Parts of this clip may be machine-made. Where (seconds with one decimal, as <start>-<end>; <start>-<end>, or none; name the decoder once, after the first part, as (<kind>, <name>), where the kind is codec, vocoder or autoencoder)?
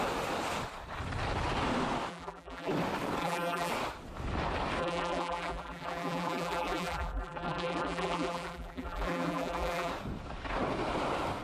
2.1-2.7 (vocoder, BigVGAN v2); 3.2-3.7; 4.8-9.9